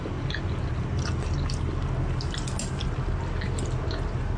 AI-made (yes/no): no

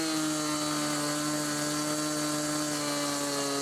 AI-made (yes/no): no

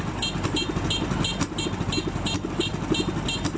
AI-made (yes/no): no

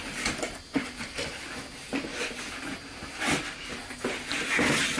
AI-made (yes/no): no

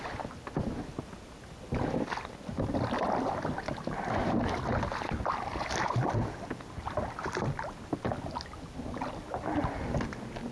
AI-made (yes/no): no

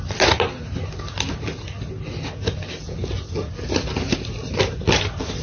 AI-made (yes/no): no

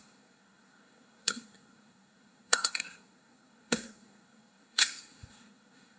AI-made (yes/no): yes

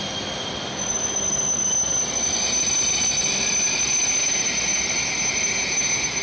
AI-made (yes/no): no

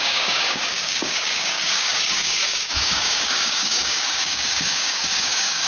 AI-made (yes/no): yes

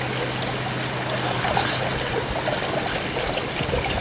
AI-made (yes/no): no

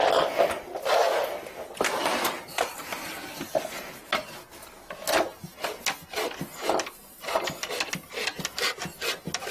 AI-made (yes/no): no